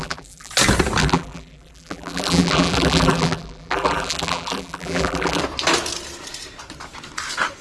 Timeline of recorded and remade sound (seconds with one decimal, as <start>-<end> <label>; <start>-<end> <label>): 0.0-0.5 remade; 0.5-1.0 recorded; 1.0-5.4 remade; 5.4-7.6 recorded